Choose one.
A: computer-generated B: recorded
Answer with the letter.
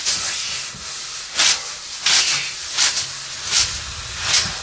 B